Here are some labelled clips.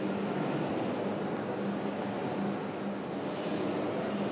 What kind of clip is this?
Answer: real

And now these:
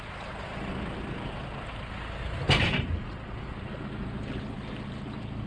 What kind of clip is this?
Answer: real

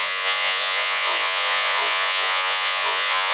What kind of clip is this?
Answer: fake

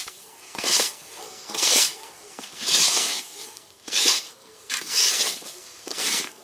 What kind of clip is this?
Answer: fake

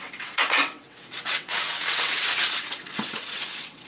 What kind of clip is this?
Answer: fake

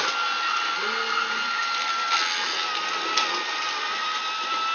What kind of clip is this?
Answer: real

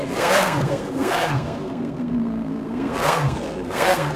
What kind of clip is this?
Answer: fake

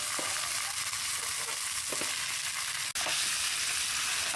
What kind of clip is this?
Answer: real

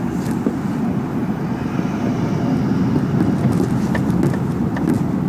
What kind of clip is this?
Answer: real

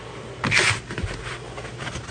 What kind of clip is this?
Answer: real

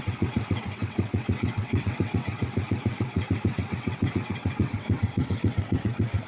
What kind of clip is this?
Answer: fake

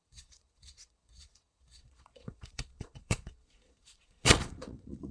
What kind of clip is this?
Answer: fake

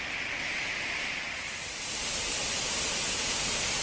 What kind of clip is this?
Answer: real